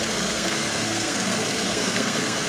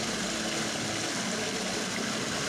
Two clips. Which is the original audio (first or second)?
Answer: second